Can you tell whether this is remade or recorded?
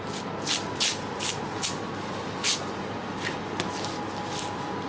recorded